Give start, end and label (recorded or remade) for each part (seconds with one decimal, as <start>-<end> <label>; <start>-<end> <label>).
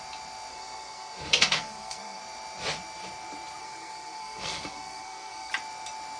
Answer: 0.0-0.5 recorded; 0.5-2.2 remade; 2.2-3.6 recorded; 3.6-5.5 remade; 5.5-6.2 recorded